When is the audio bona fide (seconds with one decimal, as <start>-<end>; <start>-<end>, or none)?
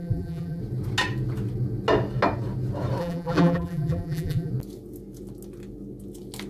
0.6-3.0; 4.5-6.5